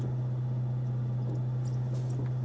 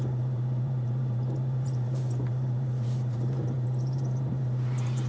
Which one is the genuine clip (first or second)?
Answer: first